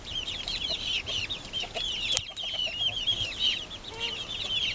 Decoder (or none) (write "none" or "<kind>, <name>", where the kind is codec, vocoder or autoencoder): none